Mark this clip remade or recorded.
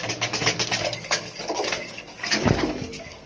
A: remade